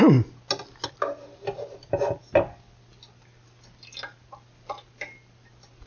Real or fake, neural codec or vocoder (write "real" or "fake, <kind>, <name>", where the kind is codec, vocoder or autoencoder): real